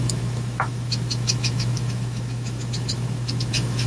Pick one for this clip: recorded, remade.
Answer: remade